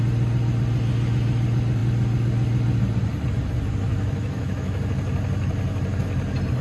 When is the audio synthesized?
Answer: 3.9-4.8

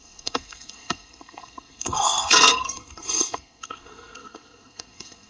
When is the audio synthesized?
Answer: 0.0-5.3

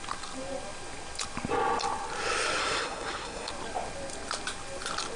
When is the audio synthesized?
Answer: 2.6-3.5